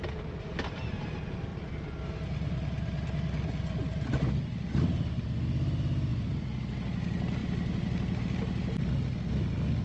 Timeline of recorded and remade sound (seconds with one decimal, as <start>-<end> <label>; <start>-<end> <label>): 0.0-1.5 recorded; 1.5-2.1 remade; 2.1-7.4 recorded; 7.4-8.2 remade; 8.2-9.8 recorded